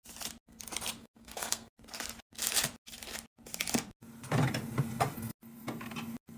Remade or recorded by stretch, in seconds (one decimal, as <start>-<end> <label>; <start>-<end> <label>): 0.0-1.0 recorded; 1.0-1.7 remade; 1.7-6.4 recorded